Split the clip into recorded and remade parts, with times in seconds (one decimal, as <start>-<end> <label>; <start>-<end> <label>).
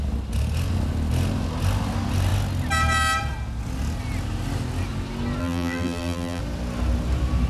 0.0-5.4 recorded; 5.4-6.4 remade; 6.4-7.5 recorded